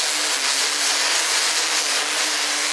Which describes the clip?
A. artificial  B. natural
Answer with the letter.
B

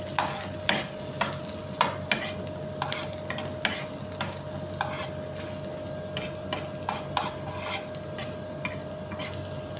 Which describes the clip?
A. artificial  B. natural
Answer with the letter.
B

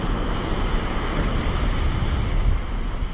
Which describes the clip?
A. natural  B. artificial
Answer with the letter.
A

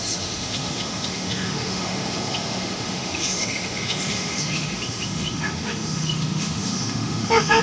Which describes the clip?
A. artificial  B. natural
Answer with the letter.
A